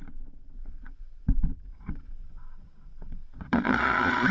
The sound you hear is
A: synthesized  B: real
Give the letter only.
A